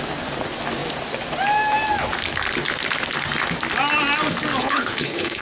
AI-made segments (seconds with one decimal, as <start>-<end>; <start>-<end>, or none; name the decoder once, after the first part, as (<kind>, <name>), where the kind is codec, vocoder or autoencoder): 4.6-5.4 (codec, HILCodec)